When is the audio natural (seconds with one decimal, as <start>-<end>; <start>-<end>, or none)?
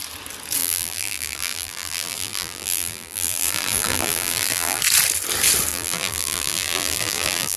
0.0-0.6; 4.8-5.7